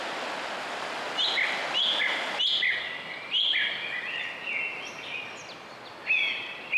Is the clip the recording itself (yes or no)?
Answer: yes